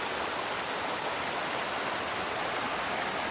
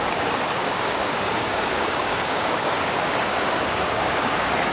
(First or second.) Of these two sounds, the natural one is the first